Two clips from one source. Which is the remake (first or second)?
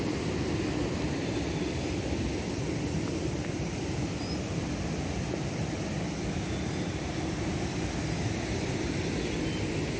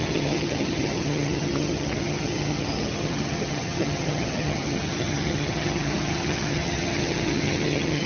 second